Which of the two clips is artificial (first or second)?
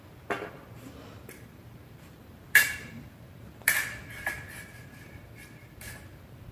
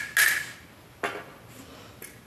first